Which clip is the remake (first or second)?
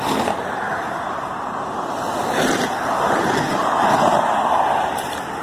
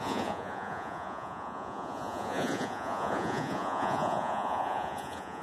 second